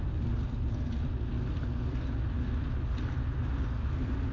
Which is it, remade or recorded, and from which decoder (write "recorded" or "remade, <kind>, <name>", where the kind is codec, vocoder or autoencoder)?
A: recorded